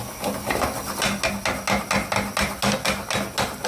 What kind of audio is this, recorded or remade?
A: recorded